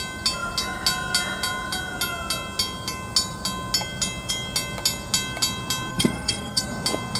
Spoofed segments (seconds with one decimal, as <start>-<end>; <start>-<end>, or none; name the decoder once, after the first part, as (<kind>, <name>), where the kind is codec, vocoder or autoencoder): 5.9-6.7 (codec, SNAC)